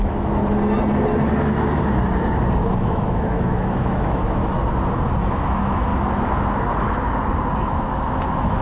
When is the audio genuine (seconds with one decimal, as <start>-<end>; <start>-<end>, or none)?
0.4-2.6; 4.4-5.2; 5.9-7.6

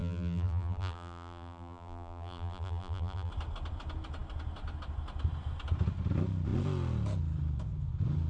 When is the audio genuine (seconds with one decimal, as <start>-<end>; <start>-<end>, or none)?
3.3-8.3

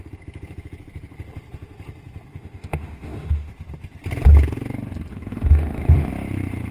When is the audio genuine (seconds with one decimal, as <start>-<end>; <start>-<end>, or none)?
0.0-2.3; 3.5-5.1; 6.1-6.7

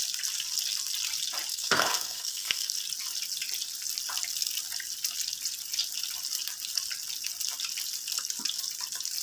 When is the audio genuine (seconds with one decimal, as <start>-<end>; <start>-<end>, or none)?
0.0-1.5; 2.7-9.2